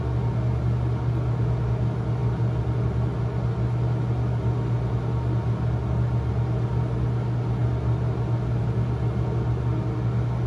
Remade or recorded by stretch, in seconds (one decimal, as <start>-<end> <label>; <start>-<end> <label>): 0.0-10.5 recorded